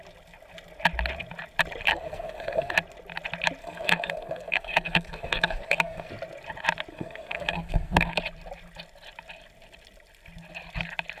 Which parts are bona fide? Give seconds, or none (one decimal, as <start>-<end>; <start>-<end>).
0.0-1.9; 2.7-3.6; 6.1-6.9; 8.2-11.2